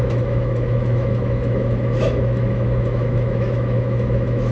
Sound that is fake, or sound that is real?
fake